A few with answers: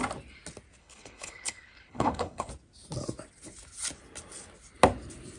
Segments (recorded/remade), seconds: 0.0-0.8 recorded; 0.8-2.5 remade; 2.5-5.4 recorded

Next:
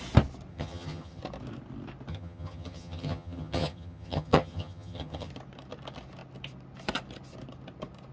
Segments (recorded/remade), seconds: 0.0-0.5 recorded; 0.5-1.2 remade; 1.2-2.1 recorded; 2.1-5.3 remade; 5.3-8.1 recorded

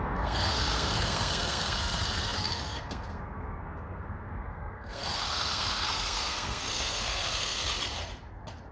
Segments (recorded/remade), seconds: 0.0-7.6 remade; 7.6-8.7 recorded

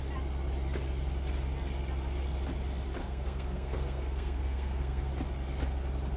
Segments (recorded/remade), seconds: 0.0-3.0 recorded; 3.0-5.1 remade; 5.1-6.2 recorded

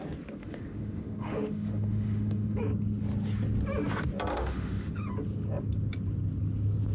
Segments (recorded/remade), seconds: 0.0-0.4 recorded; 0.4-2.6 remade; 2.6-4.3 recorded; 4.3-5.0 remade; 5.0-6.9 recorded